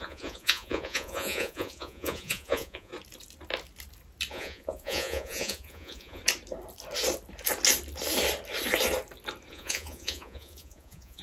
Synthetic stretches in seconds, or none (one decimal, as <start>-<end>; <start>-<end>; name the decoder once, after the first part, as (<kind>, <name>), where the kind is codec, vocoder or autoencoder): 0.0-2.9 (vocoder, Vocos); 4.3-6.2; 9.5-11.2